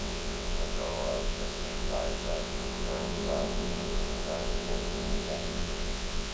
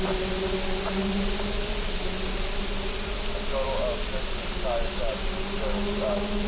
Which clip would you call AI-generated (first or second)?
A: first